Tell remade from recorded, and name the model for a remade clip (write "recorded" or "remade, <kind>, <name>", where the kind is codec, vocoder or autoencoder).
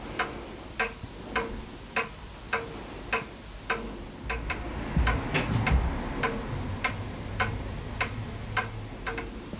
recorded